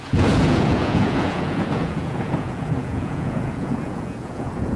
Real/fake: fake